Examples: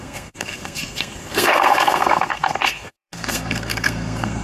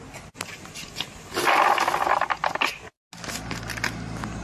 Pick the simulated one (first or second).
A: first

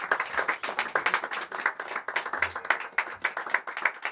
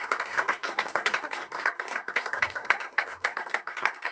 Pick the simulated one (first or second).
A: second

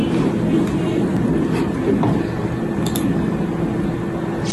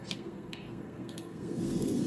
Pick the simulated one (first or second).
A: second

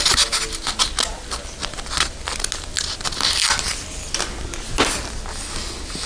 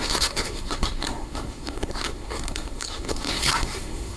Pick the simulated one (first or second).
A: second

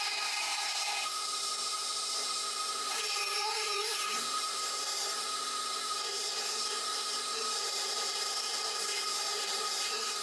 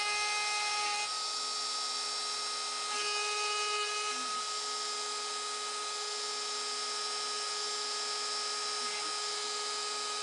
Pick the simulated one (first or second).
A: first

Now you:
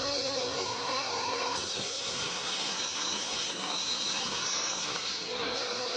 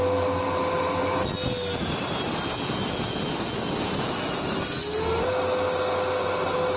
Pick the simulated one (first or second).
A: first